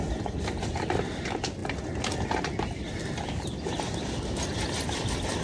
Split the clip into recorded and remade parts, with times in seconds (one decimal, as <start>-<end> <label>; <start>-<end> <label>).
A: 0.0-5.4 recorded